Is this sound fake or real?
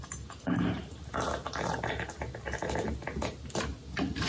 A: real